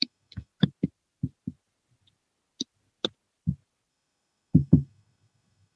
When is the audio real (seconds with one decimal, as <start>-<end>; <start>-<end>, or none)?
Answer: 0.5-3.9